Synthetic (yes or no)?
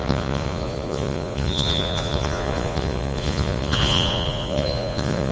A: yes